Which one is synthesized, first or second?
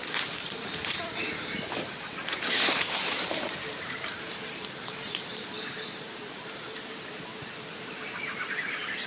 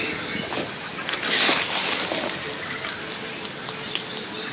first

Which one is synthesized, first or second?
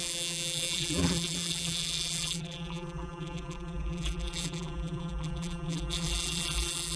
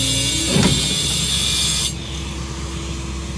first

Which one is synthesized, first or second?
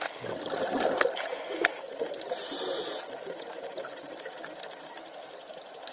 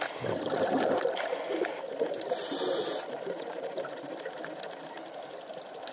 second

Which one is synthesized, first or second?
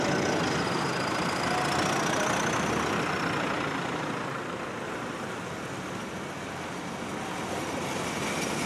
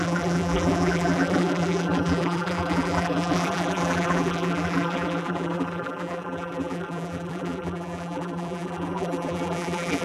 second